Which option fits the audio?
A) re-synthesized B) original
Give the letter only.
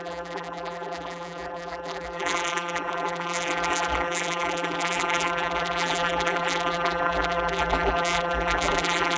A